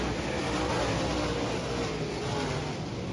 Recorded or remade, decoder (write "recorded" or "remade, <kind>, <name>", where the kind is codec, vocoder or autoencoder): recorded